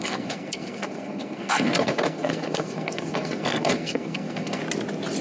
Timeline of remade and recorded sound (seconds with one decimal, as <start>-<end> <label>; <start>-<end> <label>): 0.0-4.6 remade; 4.6-5.2 recorded